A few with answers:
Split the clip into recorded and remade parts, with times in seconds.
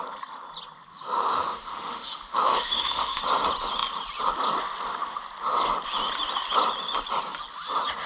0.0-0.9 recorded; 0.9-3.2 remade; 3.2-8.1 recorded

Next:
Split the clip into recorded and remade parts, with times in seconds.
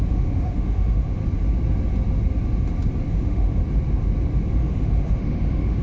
0.0-1.2 remade; 1.2-3.1 recorded; 3.1-3.6 remade; 3.6-4.6 recorded; 4.6-5.8 remade